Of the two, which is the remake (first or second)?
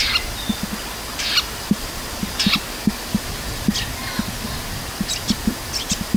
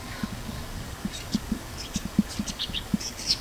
second